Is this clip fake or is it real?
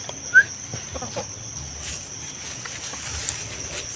real